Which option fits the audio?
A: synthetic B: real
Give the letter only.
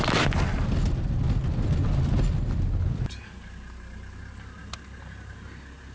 B